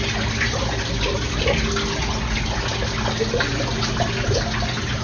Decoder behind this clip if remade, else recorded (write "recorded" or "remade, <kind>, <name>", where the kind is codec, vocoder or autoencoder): recorded